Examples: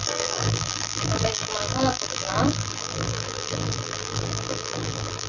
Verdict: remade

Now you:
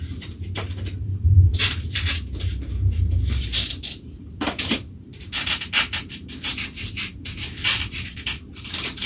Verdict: remade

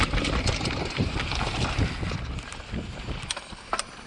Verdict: recorded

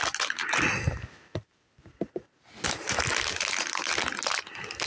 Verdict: recorded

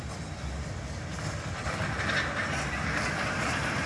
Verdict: recorded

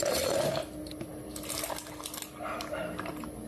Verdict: recorded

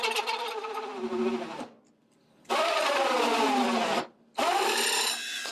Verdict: recorded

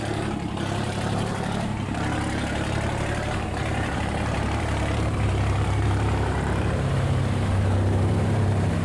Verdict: remade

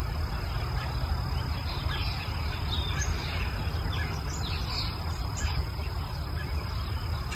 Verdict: recorded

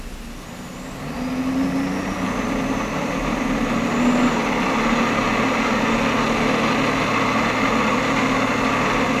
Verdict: recorded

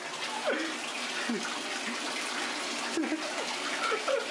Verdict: recorded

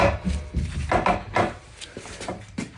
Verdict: recorded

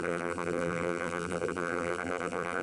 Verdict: remade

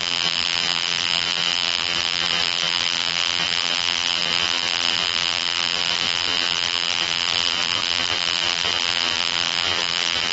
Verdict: remade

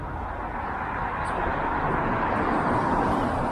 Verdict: recorded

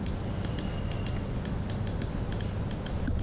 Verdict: recorded